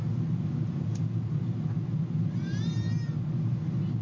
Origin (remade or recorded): recorded